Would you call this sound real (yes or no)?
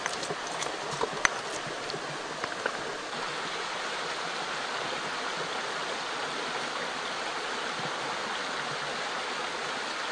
yes